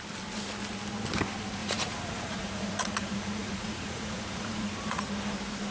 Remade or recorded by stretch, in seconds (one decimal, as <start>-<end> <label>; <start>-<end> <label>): 0.0-1.6 recorded; 1.6-5.0 remade; 5.0-5.7 recorded